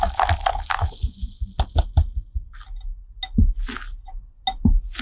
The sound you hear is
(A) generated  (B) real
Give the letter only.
B